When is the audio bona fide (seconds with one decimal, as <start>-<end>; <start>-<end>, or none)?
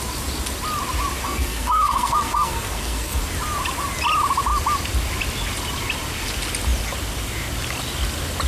0.0-1.2; 3.2-8.5